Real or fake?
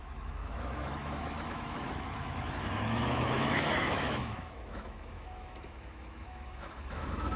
fake